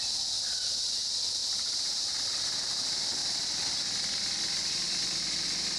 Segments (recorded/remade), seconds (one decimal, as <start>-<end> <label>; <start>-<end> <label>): 0.0-5.8 recorded